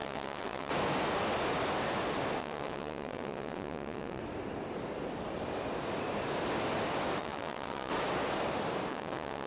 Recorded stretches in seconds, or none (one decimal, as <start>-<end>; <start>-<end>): 0.7-2.4; 4.2-7.2; 7.9-8.9